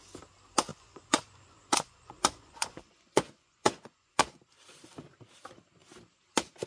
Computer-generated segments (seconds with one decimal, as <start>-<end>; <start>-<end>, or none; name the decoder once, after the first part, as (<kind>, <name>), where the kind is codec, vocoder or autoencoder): 0.7-4.4 (vocoder, Vocos)